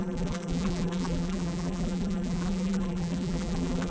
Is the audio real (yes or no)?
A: no